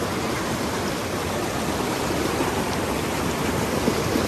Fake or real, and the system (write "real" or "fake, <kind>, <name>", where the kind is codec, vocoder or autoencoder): real